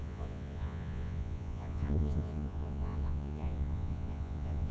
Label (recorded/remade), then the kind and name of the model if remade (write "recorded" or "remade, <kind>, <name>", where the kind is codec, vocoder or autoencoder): remade, vocoder, Vocos